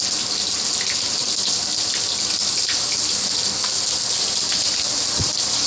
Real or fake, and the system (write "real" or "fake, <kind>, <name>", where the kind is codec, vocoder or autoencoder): real